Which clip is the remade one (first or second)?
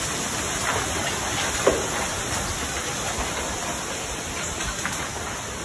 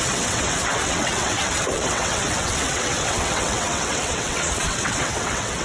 second